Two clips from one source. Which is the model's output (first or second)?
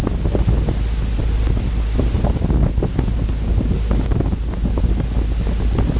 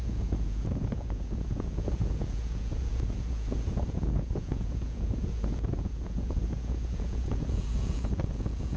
second